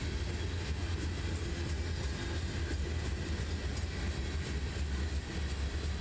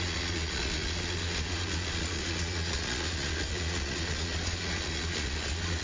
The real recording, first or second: first